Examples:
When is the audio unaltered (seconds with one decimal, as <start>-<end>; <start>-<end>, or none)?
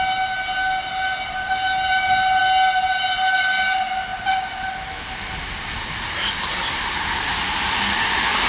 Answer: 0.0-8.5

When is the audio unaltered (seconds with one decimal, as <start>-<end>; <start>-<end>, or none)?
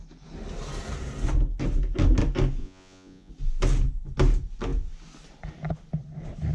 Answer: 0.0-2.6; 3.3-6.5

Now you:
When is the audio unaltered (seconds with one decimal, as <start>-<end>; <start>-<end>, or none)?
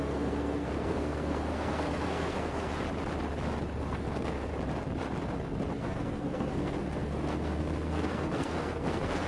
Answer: 2.7-3.8; 4.5-5.8